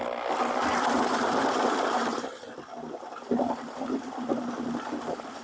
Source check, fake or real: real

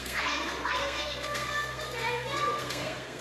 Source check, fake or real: fake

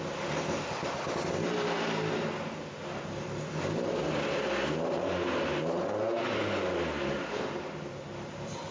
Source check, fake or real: real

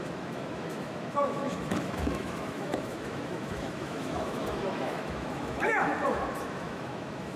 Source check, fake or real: fake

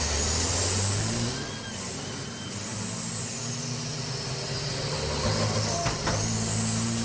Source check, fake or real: real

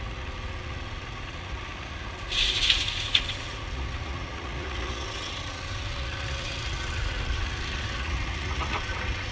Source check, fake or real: fake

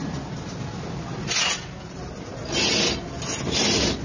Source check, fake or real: real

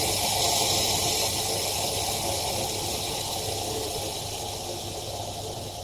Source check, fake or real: real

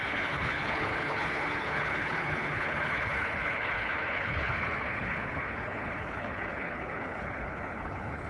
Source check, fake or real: fake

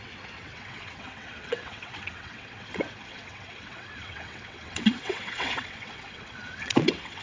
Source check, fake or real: fake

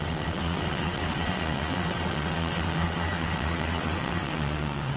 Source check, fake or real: fake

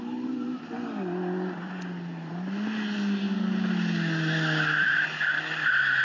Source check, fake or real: real